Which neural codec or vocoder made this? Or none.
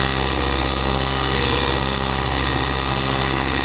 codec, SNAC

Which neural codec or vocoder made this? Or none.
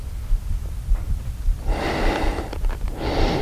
none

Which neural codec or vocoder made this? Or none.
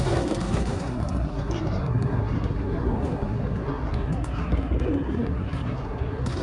codec, SNAC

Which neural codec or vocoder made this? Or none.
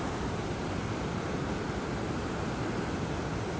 none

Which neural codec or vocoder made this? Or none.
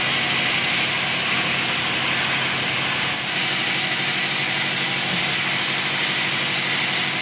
none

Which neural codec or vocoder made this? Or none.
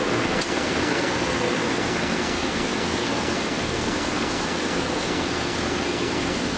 codec, SNAC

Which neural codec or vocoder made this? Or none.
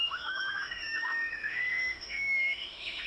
autoencoder, DAC-VAE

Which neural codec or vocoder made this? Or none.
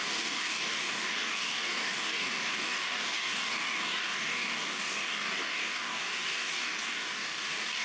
codec, DAC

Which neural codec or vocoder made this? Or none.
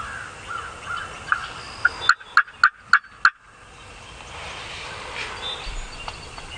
none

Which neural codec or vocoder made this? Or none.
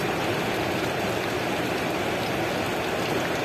none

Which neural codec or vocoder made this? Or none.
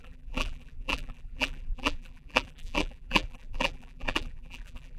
vocoder, BigVGAN v2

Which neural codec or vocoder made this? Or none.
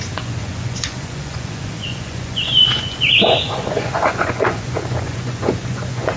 vocoder, Vocos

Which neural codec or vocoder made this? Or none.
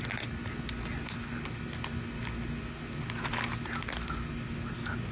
none